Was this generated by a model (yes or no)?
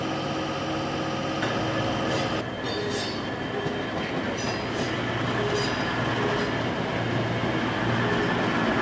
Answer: no